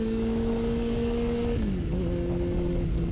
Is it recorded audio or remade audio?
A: remade